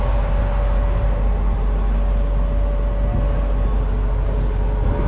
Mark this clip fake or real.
real